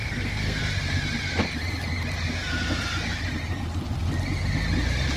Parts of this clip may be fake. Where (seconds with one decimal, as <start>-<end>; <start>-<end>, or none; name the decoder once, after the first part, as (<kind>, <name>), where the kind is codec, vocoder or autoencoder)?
0.0-0.6 (codec, SNAC)